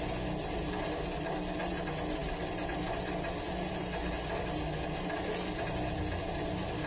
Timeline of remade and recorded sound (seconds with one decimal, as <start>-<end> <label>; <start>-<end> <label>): 0.0-6.9 recorded